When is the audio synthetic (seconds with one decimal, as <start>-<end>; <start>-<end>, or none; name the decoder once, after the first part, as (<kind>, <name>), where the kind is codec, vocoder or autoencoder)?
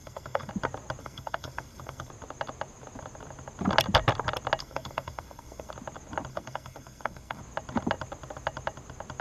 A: 0.0-0.5 (codec, SNAC); 1.0-2.1; 4.6-5.7; 6.3-7.4